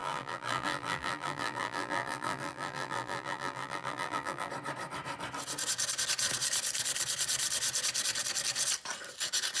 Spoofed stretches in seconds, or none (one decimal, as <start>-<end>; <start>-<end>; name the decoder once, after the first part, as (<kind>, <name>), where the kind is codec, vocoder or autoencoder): 0.0-4.5 (vocoder, BigVGAN v2)

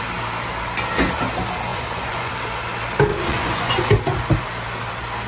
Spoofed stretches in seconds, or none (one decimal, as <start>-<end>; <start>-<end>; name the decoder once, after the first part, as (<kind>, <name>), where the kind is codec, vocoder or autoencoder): 1.7-2.3 (vocoder, Vocos); 3.1-3.9

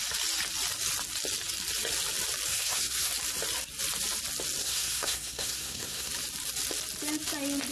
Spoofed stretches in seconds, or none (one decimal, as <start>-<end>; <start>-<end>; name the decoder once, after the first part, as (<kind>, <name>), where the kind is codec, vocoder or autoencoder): 2.5-3.1 (codec, SNAC); 4.6-6.1

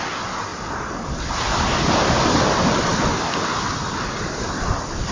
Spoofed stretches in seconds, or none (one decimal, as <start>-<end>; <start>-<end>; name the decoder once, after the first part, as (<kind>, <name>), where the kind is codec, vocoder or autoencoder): none

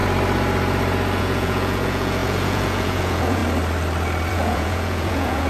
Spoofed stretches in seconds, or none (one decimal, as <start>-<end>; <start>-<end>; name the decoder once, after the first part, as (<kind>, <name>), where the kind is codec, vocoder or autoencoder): 1.2-3.4 (vocoder, Vocos); 4.3-5.5

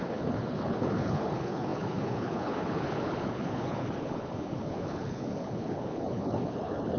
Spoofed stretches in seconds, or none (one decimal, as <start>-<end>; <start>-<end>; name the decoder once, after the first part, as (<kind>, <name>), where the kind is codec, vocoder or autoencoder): 0.0-7.0 (codec, HILCodec)

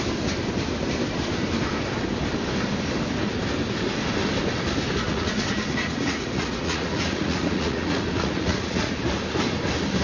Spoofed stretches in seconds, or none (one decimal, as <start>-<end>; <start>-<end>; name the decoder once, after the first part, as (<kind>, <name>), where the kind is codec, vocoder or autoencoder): 5.1-8.9 (vocoder, Vocos)

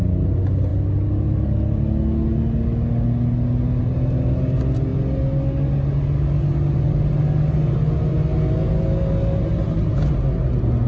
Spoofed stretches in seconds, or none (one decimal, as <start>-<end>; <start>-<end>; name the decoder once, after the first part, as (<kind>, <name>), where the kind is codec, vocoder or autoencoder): none